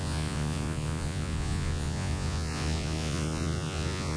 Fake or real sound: fake